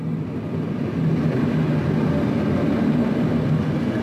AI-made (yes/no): no